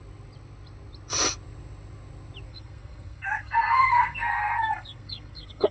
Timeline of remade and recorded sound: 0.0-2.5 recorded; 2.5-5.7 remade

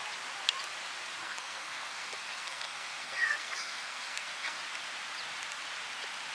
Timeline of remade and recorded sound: 0.0-1.2 recorded; 1.2-4.6 remade; 4.6-6.3 recorded

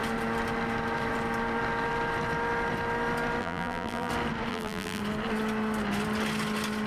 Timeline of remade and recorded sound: 0.0-3.4 recorded; 3.4-4.1 remade; 4.1-4.5 recorded; 4.5-5.0 remade; 5.0-6.9 recorded

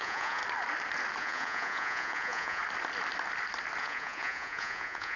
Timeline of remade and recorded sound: 0.0-0.4 remade; 0.4-1.2 recorded; 1.2-2.6 remade; 2.6-3.8 recorded; 3.8-5.2 remade

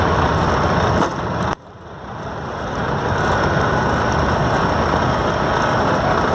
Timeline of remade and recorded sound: 0.0-1.1 recorded; 1.1-4.6 remade; 4.6-6.3 recorded

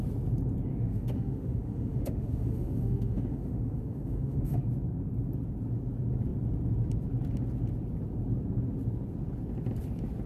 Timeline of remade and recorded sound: 0.0-0.7 recorded; 0.7-4.6 remade; 4.6-10.3 recorded